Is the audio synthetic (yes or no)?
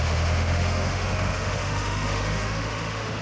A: yes